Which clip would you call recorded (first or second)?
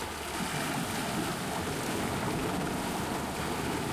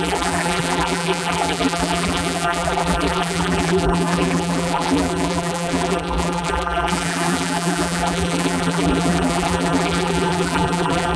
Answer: first